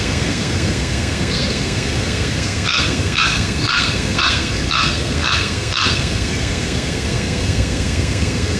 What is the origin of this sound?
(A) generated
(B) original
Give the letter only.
A